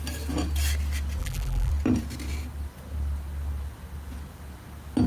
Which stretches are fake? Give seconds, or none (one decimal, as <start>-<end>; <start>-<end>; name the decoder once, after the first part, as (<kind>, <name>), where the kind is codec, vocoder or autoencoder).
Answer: 1.2-1.7 (vocoder, BigVGAN v2)